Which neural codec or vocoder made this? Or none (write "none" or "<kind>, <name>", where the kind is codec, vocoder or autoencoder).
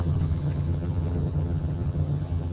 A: vocoder, HiFi-GAN